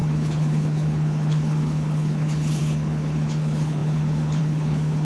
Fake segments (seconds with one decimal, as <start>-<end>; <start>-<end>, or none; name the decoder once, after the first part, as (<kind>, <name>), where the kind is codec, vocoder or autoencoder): 0.0-5.0 (codec, HILCodec)